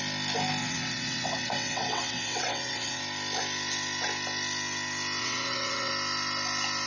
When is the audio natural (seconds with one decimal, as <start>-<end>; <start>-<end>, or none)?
0.0-0.6; 3.0-5.2; 5.9-6.9